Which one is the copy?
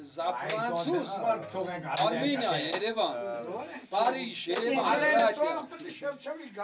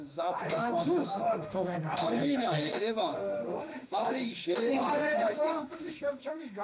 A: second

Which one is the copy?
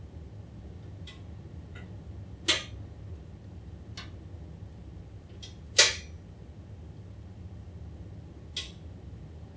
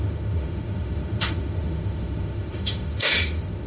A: second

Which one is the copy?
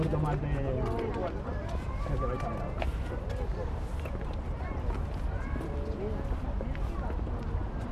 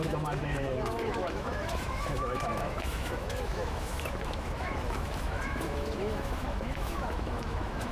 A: second